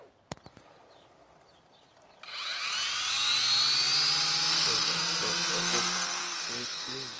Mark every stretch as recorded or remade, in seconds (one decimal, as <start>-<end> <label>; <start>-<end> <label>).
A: 0.0-4.5 recorded; 4.5-5.0 remade; 5.0-5.5 recorded; 5.5-7.2 remade

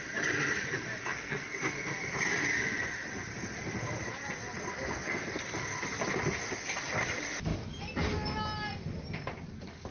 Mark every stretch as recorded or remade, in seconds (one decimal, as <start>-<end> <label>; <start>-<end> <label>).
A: 0.0-1.0 recorded; 1.0-1.6 remade; 1.6-4.7 recorded; 4.7-5.4 remade; 5.4-9.9 recorded

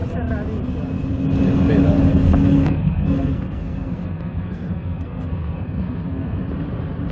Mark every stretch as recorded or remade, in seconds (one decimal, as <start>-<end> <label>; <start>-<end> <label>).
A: 0.0-2.1 recorded; 2.1-6.4 remade; 6.4-7.1 recorded

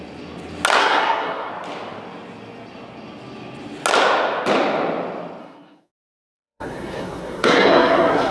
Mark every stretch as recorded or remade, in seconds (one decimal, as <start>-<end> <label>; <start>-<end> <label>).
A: 0.0-0.8 recorded; 0.8-1.5 remade; 1.5-5.4 recorded; 5.4-8.3 remade

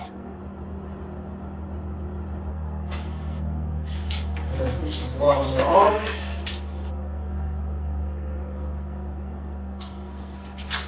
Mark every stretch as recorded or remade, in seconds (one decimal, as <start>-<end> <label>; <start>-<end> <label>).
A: 0.0-0.4 remade; 0.4-2.5 recorded; 2.5-10.9 remade

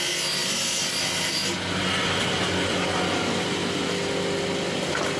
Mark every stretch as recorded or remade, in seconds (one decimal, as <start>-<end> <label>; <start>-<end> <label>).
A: 0.0-5.2 recorded

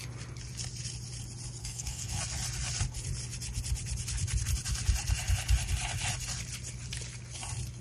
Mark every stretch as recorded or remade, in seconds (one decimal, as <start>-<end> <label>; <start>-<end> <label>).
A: 0.0-1.6 recorded; 1.6-2.2 remade; 2.2-7.8 recorded

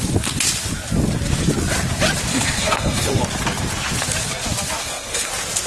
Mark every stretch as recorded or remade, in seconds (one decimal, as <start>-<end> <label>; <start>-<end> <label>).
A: 0.0-2.3 recorded; 2.3-3.2 remade; 3.2-4.8 recorded; 4.8-5.3 remade; 5.3-5.7 recorded